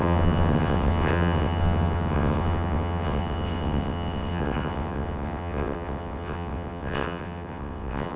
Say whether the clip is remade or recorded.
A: remade